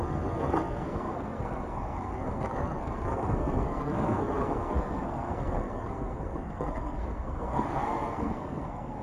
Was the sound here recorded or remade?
remade